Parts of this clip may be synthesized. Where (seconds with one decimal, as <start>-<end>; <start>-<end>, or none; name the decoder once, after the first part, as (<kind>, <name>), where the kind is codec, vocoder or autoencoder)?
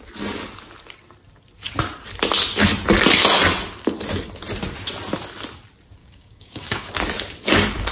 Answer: 6.0-6.9 (codec, DAC)